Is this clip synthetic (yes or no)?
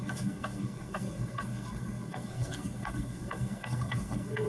yes